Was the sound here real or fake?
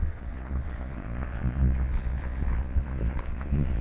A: fake